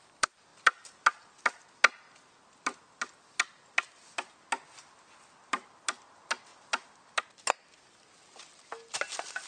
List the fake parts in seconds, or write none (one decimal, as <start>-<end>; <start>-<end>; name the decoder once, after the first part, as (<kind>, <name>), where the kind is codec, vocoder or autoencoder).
none